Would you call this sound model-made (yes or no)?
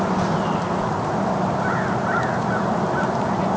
no